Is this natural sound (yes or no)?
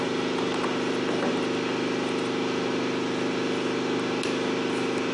yes